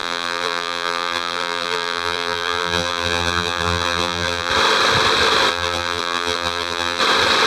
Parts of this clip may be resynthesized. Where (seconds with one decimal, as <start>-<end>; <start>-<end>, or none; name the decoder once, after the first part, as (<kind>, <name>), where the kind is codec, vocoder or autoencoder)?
0.0-4.5 (vocoder, BigVGAN v2); 5.5-7.0